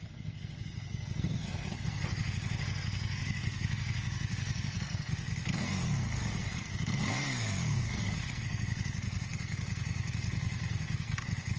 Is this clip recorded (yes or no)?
no